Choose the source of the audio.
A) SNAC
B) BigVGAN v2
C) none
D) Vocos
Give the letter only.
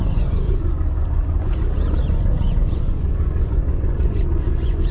D